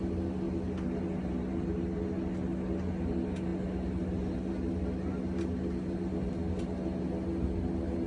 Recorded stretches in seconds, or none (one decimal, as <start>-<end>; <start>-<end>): 0.0-8.1